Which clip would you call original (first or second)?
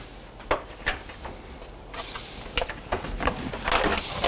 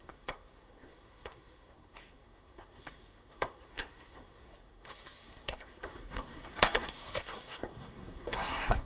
first